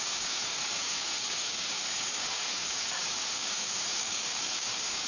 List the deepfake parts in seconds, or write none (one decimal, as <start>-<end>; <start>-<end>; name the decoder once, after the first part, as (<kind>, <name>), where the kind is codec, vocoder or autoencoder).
0.0-5.1 (codec, DAC)